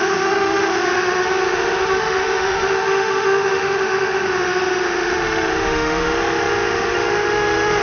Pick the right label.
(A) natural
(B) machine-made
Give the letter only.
B